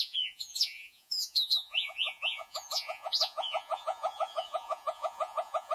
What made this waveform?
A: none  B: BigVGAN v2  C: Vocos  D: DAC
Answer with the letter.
C